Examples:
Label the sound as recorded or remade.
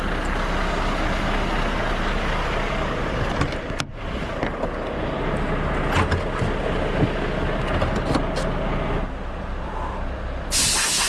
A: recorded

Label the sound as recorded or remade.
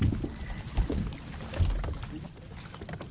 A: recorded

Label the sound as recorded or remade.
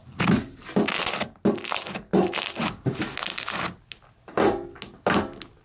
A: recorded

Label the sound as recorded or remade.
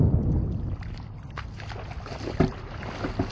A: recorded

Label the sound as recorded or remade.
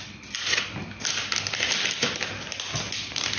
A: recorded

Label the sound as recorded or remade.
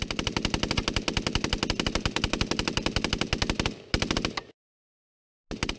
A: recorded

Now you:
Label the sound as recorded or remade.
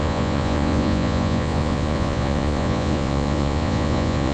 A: remade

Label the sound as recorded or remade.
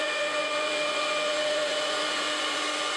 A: remade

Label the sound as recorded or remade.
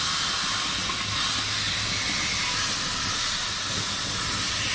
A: recorded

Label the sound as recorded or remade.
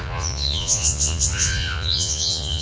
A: remade